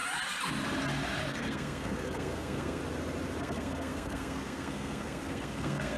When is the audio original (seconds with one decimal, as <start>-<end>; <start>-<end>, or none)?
0.0-1.3; 2.8-3.4